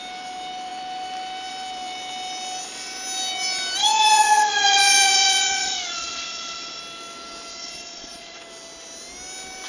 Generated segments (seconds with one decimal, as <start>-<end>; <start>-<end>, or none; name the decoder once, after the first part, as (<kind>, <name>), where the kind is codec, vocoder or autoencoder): 3.8-6.8 (vocoder, Vocos); 7.5-8.4